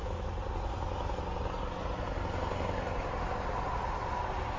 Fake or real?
real